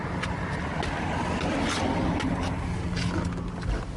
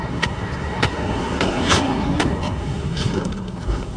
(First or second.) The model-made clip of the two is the second